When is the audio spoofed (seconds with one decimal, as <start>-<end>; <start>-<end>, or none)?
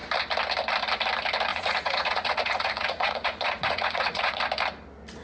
1.5-4.4